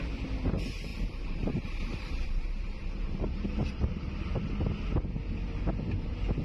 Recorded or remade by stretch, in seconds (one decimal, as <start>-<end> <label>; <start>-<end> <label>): 0.0-0.9 recorded; 0.9-4.1 remade; 4.1-6.4 recorded